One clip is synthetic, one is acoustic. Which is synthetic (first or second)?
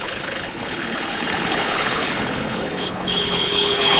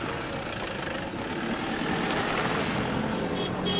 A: first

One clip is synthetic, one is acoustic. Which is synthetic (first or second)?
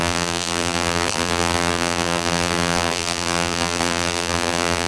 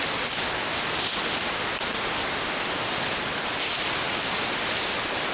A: first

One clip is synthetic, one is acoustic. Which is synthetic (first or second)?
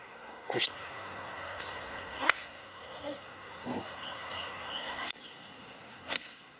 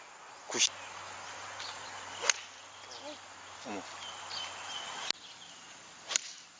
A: first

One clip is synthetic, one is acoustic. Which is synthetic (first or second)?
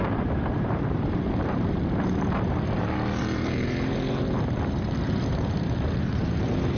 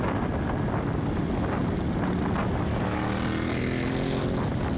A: first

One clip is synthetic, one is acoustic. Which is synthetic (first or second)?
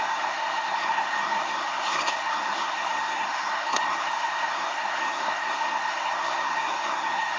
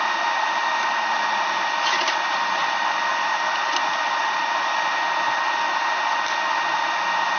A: first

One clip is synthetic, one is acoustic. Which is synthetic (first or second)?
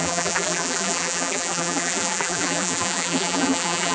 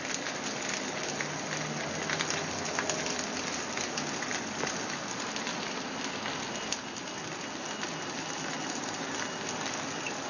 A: first